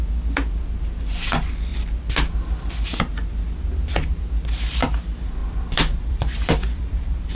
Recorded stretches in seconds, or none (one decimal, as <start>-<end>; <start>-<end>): 0.0-5.4